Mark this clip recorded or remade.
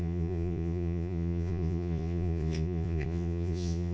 remade